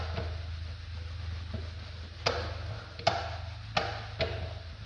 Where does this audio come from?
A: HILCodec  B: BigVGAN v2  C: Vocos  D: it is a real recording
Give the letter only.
D